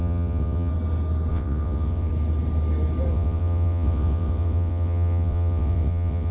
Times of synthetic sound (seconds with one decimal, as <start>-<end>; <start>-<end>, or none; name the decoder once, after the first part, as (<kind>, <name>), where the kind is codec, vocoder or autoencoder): 0.0-0.7 (vocoder, WaveNeXt); 1.3-2.1; 3.1-6.3